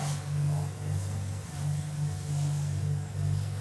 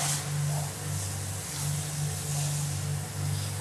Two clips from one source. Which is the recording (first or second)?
second